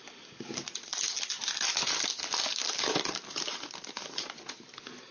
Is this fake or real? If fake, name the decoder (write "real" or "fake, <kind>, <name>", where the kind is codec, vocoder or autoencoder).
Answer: real